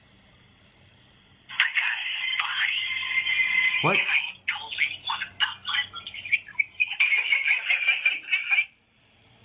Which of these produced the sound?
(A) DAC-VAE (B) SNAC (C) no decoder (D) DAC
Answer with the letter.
C